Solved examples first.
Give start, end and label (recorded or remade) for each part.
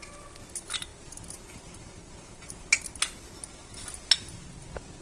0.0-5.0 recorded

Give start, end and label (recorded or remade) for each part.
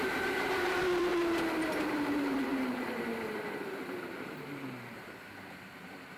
0.0-1.1 remade; 1.1-1.8 recorded; 1.8-6.2 remade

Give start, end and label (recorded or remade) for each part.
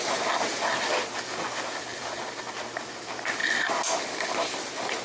0.0-5.0 recorded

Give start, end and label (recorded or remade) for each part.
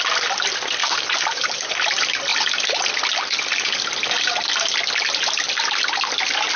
0.0-0.8 recorded; 0.8-1.7 remade; 1.7-6.6 recorded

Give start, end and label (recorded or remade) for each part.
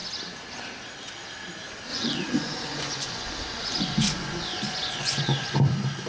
0.0-1.9 recorded; 1.9-5.6 remade; 5.6-6.1 recorded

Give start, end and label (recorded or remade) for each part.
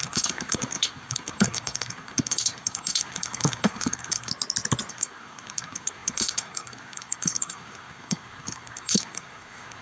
0.0-4.3 remade; 4.3-4.9 recorded; 4.9-9.8 remade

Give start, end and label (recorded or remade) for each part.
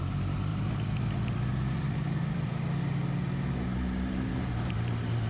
0.0-0.5 recorded; 0.5-2.5 remade; 2.5-5.3 recorded